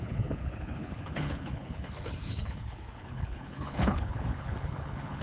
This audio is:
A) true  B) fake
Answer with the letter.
B